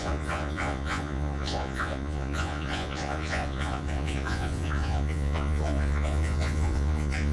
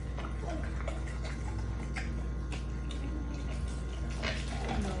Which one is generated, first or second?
first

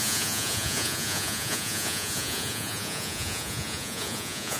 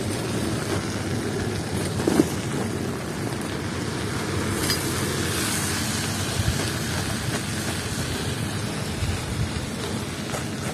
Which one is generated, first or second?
first